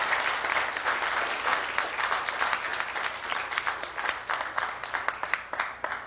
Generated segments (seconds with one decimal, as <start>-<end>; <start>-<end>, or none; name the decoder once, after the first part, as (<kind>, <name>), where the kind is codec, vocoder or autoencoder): none